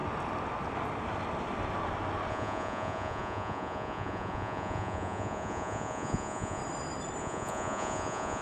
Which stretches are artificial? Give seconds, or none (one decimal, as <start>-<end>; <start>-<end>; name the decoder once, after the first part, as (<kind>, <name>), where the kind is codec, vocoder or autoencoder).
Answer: 2.3-6.6 (vocoder, Vocos); 7.2-8.4